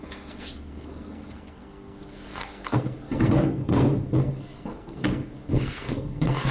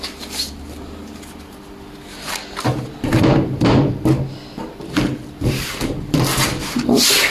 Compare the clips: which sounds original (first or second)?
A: second